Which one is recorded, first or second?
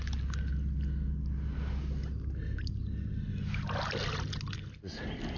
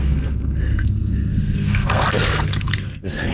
first